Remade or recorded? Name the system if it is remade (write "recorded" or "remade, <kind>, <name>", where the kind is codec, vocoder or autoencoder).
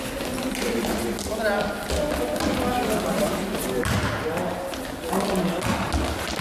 recorded